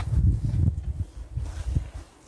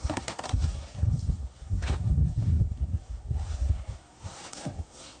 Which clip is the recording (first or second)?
first